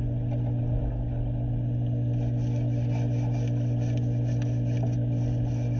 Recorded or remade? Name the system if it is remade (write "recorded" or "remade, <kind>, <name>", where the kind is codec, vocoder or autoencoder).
recorded